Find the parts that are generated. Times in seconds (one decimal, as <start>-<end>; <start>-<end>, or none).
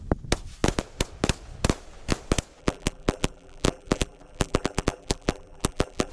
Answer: 2.6-6.1